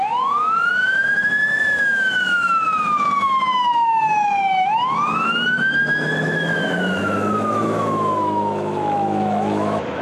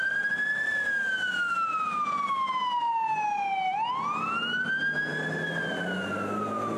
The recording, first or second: second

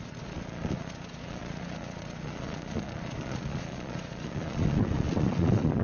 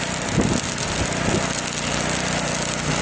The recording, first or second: second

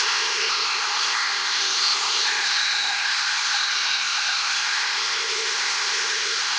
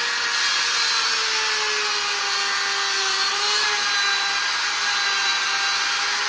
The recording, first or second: second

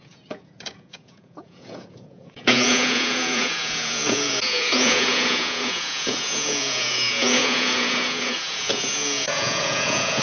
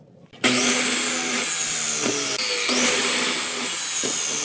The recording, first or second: second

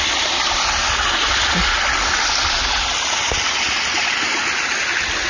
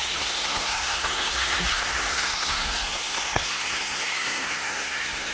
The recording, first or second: first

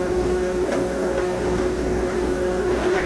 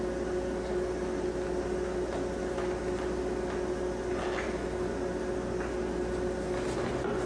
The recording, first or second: second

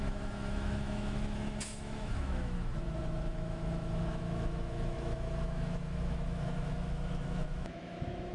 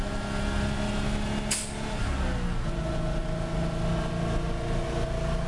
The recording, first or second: second